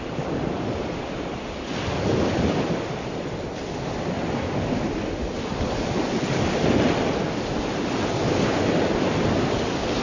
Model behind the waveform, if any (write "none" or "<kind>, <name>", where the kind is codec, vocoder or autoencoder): none